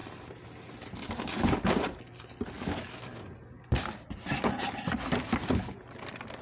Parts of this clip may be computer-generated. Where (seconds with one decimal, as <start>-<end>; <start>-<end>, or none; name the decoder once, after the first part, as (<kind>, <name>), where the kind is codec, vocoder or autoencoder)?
none